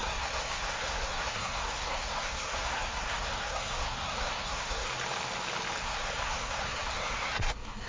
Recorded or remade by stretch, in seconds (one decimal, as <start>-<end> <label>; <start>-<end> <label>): 0.0-4.9 remade; 4.9-5.8 recorded; 5.8-7.9 remade

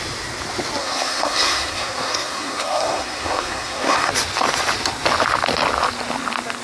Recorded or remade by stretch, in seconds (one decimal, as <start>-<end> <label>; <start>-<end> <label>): 0.0-0.8 recorded; 0.8-4.1 remade; 4.1-6.6 recorded

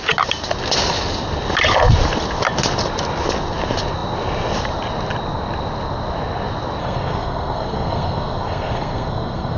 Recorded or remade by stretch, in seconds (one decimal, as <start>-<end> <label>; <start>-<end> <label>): 0.0-6.8 recorded; 6.8-9.6 remade